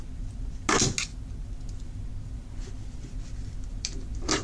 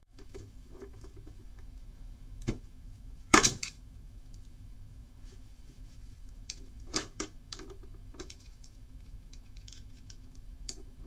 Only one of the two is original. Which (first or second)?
first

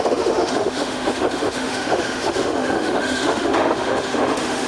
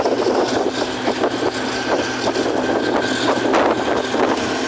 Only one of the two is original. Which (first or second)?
second